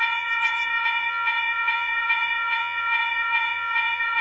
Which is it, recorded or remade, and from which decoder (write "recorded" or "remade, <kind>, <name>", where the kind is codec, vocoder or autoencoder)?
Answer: remade, vocoder, Vocos